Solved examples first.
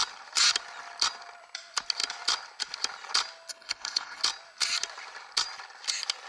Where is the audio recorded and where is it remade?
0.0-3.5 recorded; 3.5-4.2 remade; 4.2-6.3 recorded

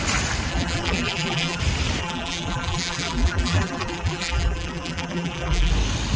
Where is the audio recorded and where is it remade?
0.0-0.5 recorded; 0.5-1.6 remade; 1.6-2.0 recorded; 2.0-5.7 remade; 5.7-6.2 recorded

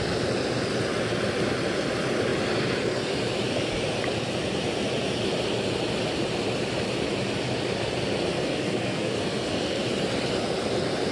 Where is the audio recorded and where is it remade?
0.0-8.3 recorded; 8.3-9.8 remade; 9.8-11.1 recorded

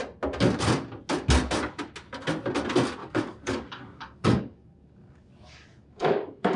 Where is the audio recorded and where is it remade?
0.0-3.0 recorded; 3.0-6.6 remade

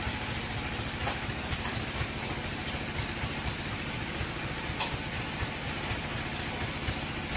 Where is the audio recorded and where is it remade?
0.0-7.4 recorded

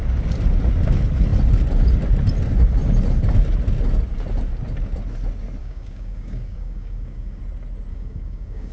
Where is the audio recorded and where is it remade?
0.0-5.6 recorded; 5.6-7.4 remade; 7.4-7.9 recorded; 7.9-8.7 remade

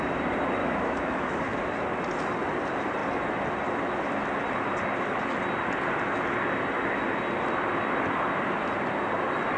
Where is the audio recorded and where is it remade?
0.0-0.6 recorded; 0.6-1.6 remade; 1.6-9.6 recorded